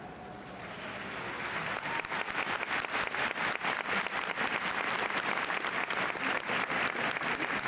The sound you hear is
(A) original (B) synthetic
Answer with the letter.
A